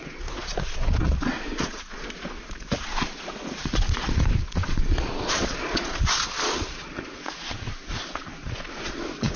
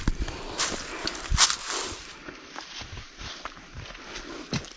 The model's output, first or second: first